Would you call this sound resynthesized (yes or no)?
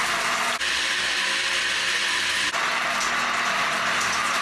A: no